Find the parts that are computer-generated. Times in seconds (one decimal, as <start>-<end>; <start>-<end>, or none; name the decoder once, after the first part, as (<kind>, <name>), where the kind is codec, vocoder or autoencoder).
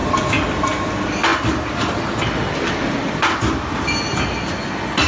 none